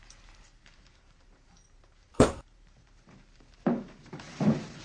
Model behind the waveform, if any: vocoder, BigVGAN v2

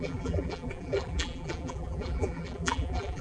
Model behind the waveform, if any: vocoder, BigVGAN v2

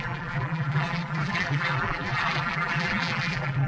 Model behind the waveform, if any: vocoder, BigVGAN v2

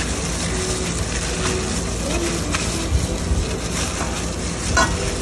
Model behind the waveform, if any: none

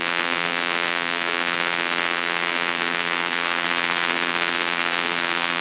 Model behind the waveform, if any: vocoder, BigVGAN v2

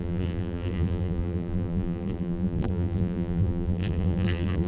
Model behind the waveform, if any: vocoder, BigVGAN v2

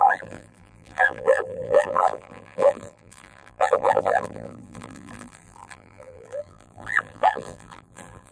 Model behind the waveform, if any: vocoder, BigVGAN v2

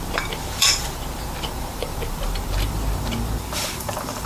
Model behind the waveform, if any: vocoder, BigVGAN v2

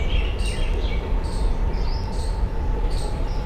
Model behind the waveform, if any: vocoder, BigVGAN v2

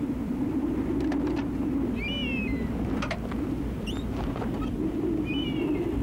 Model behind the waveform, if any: none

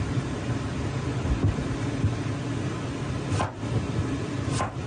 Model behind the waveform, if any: vocoder, BigVGAN v2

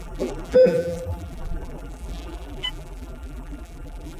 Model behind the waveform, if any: vocoder, BigVGAN v2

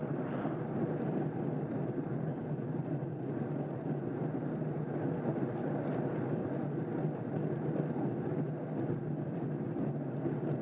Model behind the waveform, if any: none